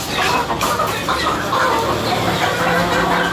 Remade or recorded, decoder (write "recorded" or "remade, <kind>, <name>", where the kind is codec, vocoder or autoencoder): recorded